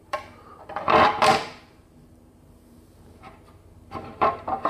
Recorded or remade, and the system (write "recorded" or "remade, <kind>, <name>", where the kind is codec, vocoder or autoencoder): remade, vocoder, BigVGAN v2